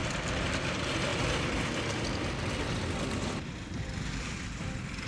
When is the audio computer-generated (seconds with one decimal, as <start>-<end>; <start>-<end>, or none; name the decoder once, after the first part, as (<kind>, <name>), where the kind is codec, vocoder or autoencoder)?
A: 0.7-1.1 (vocoder, BigVGAN v2); 4.2-5.1